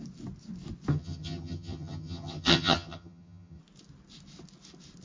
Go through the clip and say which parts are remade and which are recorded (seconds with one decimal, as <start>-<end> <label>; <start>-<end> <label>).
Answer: 0.0-0.9 recorded; 0.9-3.6 remade; 3.6-5.0 recorded